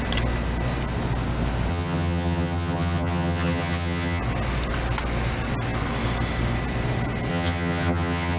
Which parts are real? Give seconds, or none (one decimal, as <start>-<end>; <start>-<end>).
0.0-1.7; 4.2-7.3